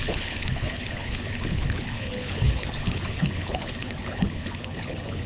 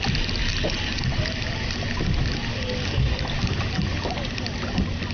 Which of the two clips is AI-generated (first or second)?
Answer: first